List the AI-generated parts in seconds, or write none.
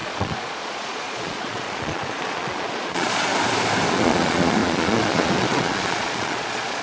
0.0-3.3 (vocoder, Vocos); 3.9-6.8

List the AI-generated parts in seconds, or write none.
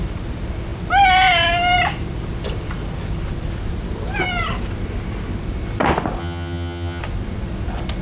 6.2-7.0 (vocoder, HiFi-GAN)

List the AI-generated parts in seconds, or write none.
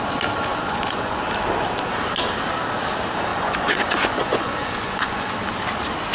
0.5-1.2 (vocoder, Vocos); 3.3-5.3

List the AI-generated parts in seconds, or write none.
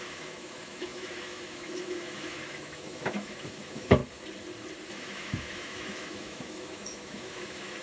0.0-4.0 (autoencoder, DAC-VAE); 4.9-7.8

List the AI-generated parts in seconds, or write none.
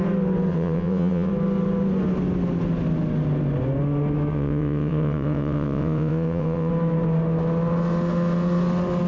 0.5-1.3 (vocoder, WaveNeXt); 4.3-6.7